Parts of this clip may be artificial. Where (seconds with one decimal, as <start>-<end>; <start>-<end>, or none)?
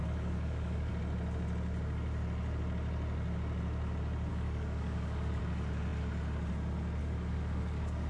0.0-0.9; 4.3-5.4; 7.0-8.1